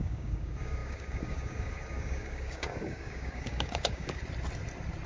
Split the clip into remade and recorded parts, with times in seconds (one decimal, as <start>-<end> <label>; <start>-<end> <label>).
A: 0.0-4.2 remade; 4.2-5.1 recorded